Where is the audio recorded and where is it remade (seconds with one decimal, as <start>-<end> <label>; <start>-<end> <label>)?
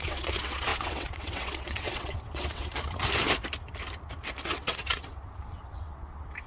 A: 0.0-2.7 remade; 2.7-4.5 recorded; 4.5-6.5 remade